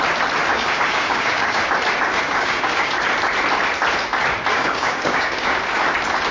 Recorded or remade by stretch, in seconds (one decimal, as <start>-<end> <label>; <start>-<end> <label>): 0.0-0.5 recorded; 0.5-1.6 remade; 1.6-2.1 recorded; 2.1-2.9 remade; 2.9-4.5 recorded; 4.5-5.6 remade; 5.6-6.3 recorded